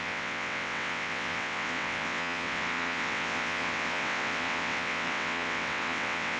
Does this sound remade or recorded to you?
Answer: remade